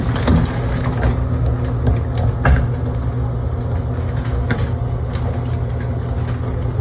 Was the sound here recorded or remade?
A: recorded